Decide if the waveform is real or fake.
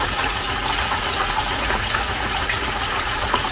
fake